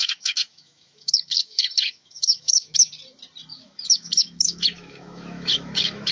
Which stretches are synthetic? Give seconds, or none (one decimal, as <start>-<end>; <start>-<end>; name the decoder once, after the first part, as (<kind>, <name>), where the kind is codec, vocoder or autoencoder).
0.0-2.9 (autoencoder, DAC-VAE); 3.5-6.1